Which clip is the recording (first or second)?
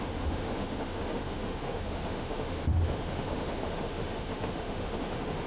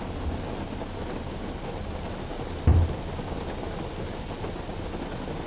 second